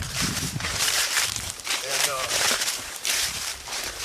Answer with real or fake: fake